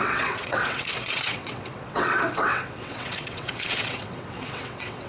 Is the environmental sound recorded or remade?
remade